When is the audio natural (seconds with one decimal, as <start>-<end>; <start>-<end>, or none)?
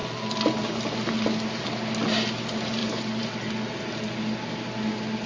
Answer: 0.0-5.3